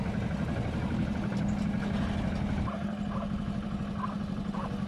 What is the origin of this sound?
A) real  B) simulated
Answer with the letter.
A